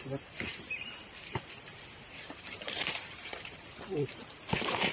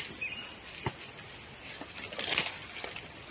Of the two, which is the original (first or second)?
second